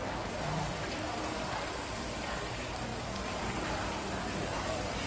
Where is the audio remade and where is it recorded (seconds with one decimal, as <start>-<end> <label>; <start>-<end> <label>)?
0.0-2.9 remade; 2.9-3.4 recorded; 3.4-5.1 remade